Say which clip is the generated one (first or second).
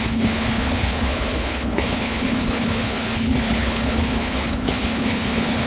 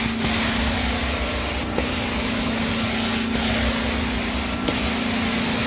first